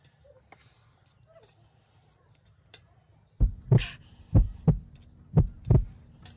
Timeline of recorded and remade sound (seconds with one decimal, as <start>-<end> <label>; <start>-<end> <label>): 0.0-6.4 recorded

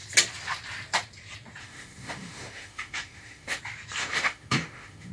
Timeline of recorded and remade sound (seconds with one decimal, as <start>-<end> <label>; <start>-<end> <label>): 0.0-1.6 recorded; 1.6-3.6 remade; 3.6-4.0 recorded; 4.0-5.1 remade

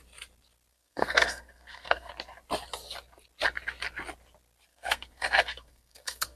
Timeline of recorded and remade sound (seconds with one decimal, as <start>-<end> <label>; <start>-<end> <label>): 0.0-0.7 recorded; 0.7-2.1 remade; 2.1-4.7 recorded; 4.7-6.4 remade

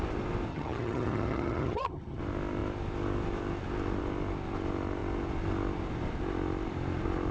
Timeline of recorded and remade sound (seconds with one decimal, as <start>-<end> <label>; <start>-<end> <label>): 0.0-0.5 recorded; 0.5-2.2 remade; 2.2-7.3 recorded

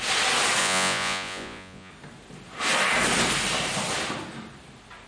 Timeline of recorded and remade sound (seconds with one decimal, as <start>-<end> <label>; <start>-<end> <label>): 0.0-0.6 recorded; 0.6-1.9 remade; 1.9-5.1 recorded

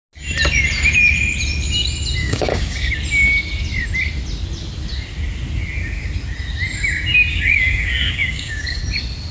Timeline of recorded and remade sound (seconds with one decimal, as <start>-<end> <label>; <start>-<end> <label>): 0.0-2.2 recorded; 2.2-2.9 remade; 2.9-7.3 recorded; 7.3-8.8 remade; 8.8-9.3 recorded